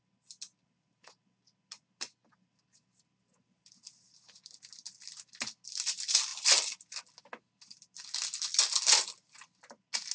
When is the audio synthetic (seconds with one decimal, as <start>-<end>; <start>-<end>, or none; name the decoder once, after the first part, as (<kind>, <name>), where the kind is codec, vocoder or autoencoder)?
none